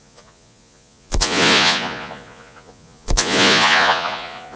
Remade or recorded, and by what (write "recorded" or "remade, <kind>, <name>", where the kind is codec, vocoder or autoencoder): remade, vocoder, Vocos